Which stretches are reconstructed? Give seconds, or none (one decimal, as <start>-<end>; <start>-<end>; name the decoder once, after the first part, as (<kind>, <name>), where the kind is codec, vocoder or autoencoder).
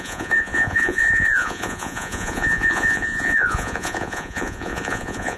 0.0-5.4 (vocoder, Vocos)